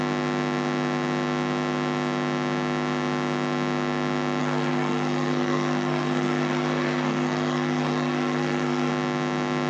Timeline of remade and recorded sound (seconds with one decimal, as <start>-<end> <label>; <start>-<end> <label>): 0.0-4.4 recorded; 4.4-8.9 remade; 8.9-9.7 recorded